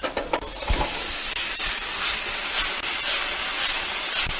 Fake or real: real